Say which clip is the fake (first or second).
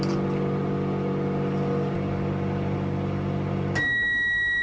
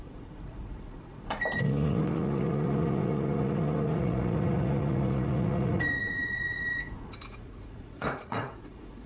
second